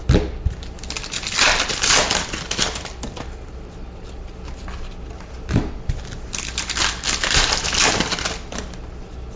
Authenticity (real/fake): real